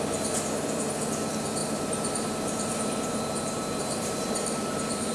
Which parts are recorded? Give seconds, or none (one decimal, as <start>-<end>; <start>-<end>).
0.0-1.6